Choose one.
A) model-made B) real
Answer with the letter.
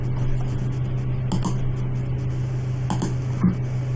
B